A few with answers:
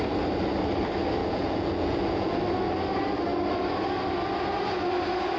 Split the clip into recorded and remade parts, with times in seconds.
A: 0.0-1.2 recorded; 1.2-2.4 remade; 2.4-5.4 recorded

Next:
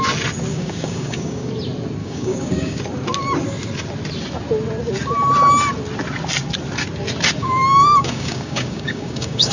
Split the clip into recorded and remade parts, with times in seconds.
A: 0.0-0.5 recorded; 0.5-1.5 remade; 1.5-2.0 recorded; 2.0-2.8 remade; 2.8-7.4 recorded; 7.4-9.5 remade

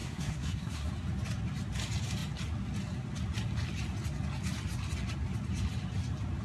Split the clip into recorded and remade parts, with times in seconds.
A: 0.0-0.9 remade; 0.9-6.4 recorded

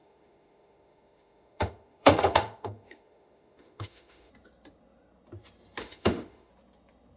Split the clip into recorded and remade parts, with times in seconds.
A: 0.0-4.3 remade; 4.3-5.8 recorded; 5.8-6.5 remade; 6.5-7.2 recorded

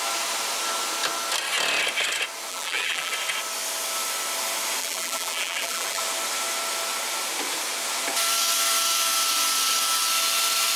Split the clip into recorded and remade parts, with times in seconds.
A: 0.0-2.5 recorded; 2.5-3.1 remade; 3.1-4.8 recorded; 4.8-6.0 remade; 6.0-10.8 recorded

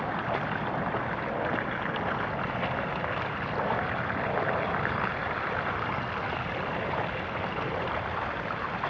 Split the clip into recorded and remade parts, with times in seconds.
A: 0.0-8.9 recorded

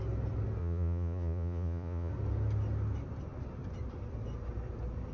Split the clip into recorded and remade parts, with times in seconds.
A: 0.0-0.6 recorded; 0.6-2.1 remade; 2.1-5.1 recorded

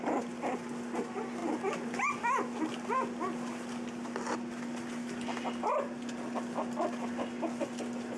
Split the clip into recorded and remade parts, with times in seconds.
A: 0.0-8.2 recorded